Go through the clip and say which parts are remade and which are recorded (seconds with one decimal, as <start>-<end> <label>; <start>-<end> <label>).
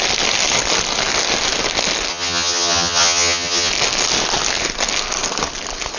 0.0-2.1 recorded; 2.1-3.7 remade; 3.7-6.0 recorded